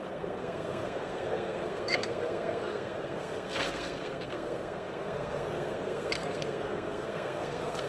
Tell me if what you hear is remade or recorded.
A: remade